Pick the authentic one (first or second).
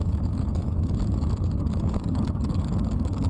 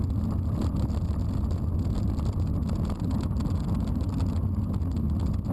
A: second